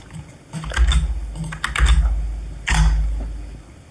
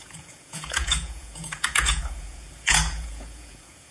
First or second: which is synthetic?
second